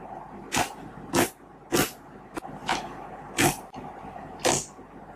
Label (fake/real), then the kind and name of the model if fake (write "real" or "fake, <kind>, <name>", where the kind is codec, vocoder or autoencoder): real